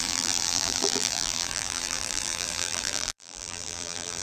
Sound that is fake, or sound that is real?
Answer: fake